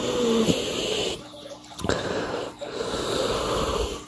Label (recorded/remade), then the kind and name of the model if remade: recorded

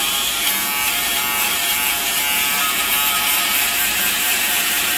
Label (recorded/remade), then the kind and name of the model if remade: remade, vocoder, BigVGAN v2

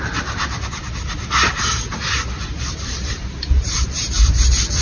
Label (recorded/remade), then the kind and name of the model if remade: remade, vocoder, BigVGAN v2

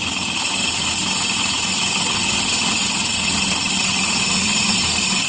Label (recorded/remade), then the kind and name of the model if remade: recorded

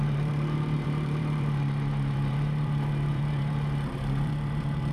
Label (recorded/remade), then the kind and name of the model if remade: remade, vocoder, BigVGAN v2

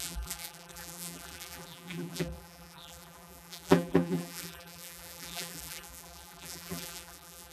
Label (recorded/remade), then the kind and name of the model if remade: remade, vocoder, BigVGAN v2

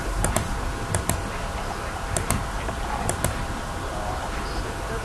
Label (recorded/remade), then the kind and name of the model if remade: recorded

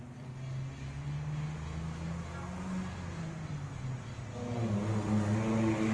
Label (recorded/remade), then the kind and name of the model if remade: recorded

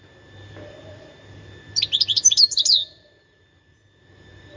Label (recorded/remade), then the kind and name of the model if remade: remade, vocoder, BigVGAN v2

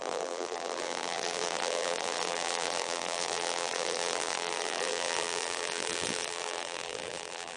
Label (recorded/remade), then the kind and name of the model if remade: remade, vocoder, BigVGAN v2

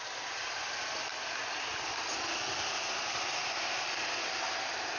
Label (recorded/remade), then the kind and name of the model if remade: remade, vocoder, BigVGAN v2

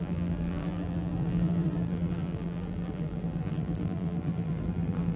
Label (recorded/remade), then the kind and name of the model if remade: remade, vocoder, BigVGAN v2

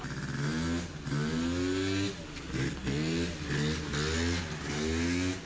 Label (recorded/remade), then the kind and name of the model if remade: recorded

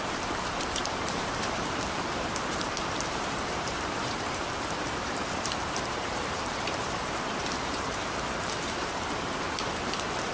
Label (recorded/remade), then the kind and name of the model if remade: remade, vocoder, BigVGAN v2